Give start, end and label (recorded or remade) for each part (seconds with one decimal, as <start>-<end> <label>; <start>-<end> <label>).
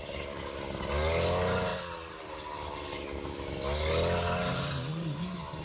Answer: 0.0-5.6 recorded